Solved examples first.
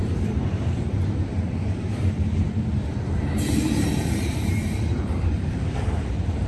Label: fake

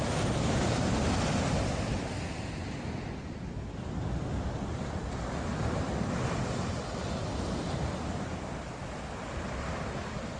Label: real